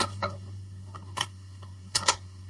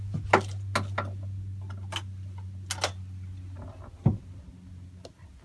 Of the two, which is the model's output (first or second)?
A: first